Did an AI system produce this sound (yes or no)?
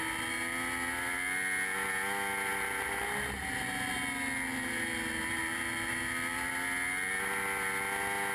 no